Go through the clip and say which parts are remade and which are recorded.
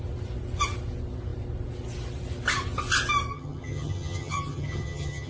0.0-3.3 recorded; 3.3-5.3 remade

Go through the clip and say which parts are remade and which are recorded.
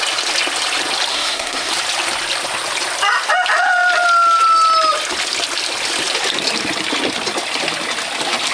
0.0-1.1 recorded; 1.1-1.7 remade; 1.7-8.5 recorded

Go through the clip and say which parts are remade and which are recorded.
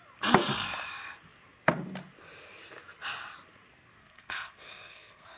0.0-4.0 recorded; 4.0-5.4 remade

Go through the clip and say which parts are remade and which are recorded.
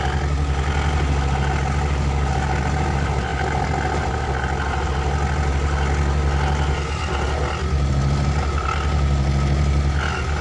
0.0-10.4 recorded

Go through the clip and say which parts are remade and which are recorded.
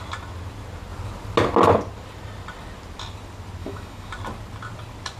0.0-3.6 recorded; 3.6-4.1 remade; 4.1-5.2 recorded